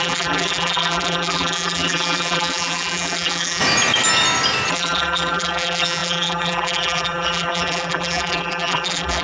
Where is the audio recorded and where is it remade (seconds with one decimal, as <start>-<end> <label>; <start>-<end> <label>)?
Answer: 0.0-3.6 remade; 3.6-4.7 recorded; 4.7-9.2 remade

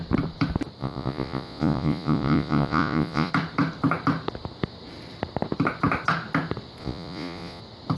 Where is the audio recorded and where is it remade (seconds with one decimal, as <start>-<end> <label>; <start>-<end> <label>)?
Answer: 0.0-0.8 recorded; 0.8-3.3 remade; 3.3-6.8 recorded; 6.8-7.6 remade; 7.6-8.0 recorded

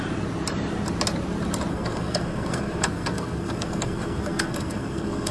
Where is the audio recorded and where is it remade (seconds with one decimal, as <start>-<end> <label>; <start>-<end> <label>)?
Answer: 0.0-1.7 recorded; 1.7-5.3 remade